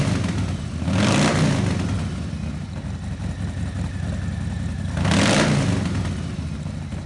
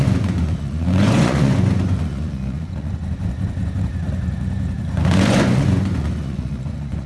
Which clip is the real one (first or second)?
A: first